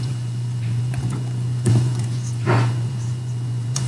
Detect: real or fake fake